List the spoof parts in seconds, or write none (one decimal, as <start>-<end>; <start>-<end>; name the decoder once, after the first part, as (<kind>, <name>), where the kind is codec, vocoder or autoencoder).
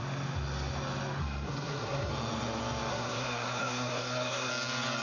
1.2-2.1 (codec, SNAC); 2.9-4.5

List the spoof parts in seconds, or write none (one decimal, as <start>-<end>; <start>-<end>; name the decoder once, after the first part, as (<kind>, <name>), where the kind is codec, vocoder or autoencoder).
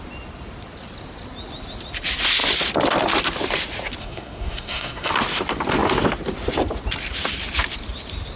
4.0-5.1 (codec, SNAC)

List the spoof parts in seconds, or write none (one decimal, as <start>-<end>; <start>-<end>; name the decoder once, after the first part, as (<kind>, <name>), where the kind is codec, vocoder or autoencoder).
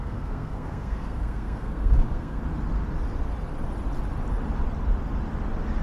0.0-2.4 (codec, SNAC)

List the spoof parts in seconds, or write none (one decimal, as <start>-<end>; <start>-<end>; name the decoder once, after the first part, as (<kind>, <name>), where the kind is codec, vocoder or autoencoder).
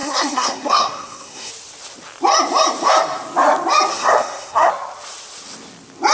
0.0-1.5 (codec, SNAC); 3.9-4.7